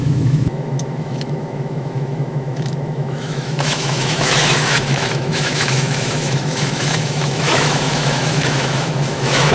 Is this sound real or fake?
fake